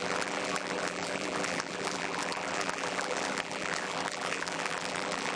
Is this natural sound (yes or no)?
no